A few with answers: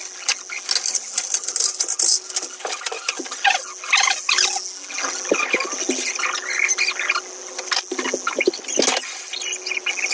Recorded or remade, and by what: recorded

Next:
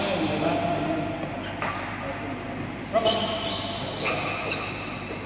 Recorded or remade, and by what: recorded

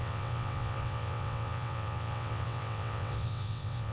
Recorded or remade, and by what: remade, vocoder, WaveNeXt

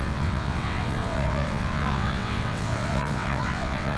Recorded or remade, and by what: remade, vocoder, WaveNeXt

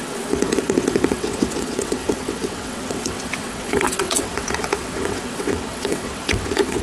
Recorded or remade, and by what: remade, vocoder, WaveNeXt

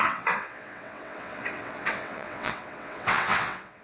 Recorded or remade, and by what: remade, vocoder, WaveNeXt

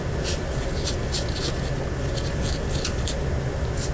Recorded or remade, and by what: recorded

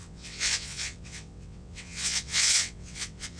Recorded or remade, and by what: remade, vocoder, WaveNeXt